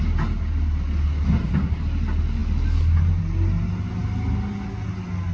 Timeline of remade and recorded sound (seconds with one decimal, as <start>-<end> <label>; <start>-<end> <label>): 0.0-5.3 recorded